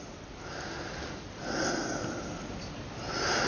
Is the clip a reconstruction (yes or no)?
no